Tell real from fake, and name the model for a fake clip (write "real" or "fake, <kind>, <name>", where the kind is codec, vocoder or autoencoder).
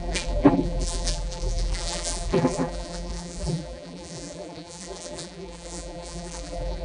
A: fake, vocoder, BigVGAN v2